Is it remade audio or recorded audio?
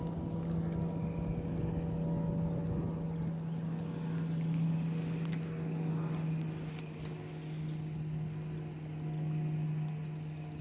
recorded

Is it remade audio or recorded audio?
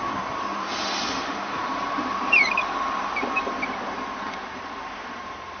remade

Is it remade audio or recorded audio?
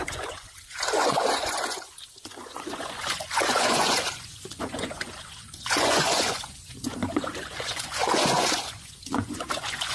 remade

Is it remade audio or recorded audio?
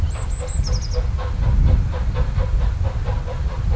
recorded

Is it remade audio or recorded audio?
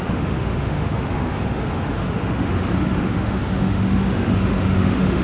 remade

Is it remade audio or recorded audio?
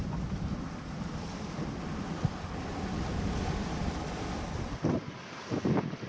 recorded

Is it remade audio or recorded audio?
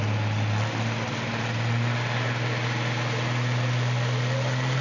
recorded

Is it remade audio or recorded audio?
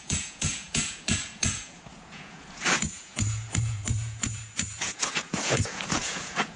remade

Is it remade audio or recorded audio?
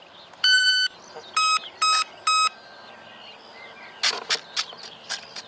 recorded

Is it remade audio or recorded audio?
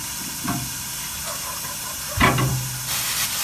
recorded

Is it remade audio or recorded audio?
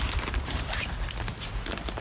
recorded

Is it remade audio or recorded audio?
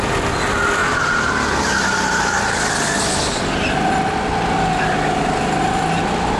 recorded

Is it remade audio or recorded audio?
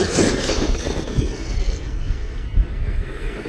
remade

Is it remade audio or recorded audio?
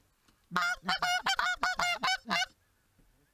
recorded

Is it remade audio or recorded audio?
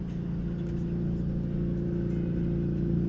recorded